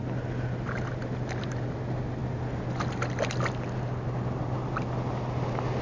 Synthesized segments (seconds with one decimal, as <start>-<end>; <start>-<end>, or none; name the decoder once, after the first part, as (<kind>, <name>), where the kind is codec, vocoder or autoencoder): none

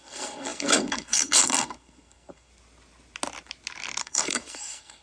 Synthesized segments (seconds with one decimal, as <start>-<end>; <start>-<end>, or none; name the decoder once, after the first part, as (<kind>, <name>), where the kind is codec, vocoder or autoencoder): 0.0-2.5 (codec, SNAC); 4.0-5.0

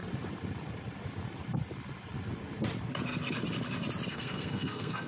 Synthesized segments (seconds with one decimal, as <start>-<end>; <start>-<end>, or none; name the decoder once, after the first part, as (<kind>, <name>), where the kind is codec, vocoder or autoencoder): 4.1-5.1 (codec, SNAC)

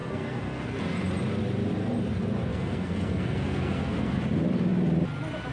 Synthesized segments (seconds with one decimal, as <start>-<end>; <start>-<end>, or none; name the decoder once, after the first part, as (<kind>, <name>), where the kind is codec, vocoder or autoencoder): 0.0-0.8 (codec, SNAC); 2.5-4.2

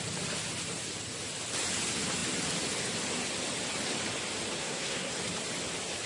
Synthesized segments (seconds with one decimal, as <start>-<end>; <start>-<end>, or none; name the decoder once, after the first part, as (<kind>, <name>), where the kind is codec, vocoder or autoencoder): 4.6-5.1 (codec, SNAC)